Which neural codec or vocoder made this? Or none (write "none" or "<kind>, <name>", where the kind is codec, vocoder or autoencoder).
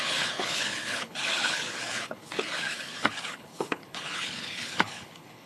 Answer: codec, HILCodec